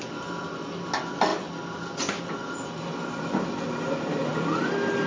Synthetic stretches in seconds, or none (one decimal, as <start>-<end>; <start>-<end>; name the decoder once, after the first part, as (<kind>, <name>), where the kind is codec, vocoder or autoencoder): none